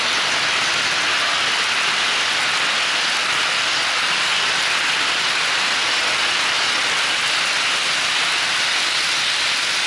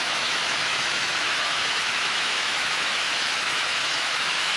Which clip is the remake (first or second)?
second